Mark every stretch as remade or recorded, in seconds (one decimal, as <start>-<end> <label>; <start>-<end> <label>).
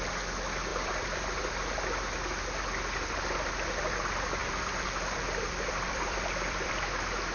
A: 0.0-0.7 recorded; 0.7-1.5 remade; 1.5-4.4 recorded; 4.4-6.7 remade; 6.7-7.3 recorded